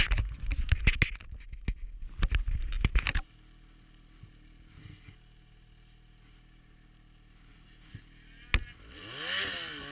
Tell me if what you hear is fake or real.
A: real